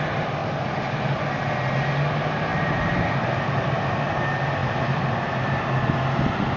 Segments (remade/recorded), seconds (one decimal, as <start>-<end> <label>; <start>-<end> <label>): 0.0-2.5 recorded; 2.5-4.0 remade; 4.0-4.6 recorded; 4.6-5.5 remade; 5.5-6.6 recorded